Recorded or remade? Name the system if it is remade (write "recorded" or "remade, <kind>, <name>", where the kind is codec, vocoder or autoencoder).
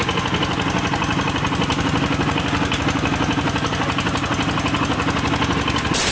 recorded